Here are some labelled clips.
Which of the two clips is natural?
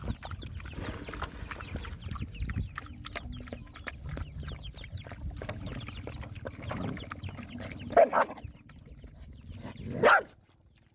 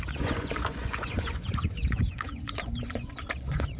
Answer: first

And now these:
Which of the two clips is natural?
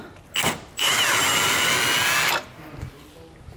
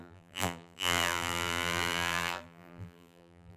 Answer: first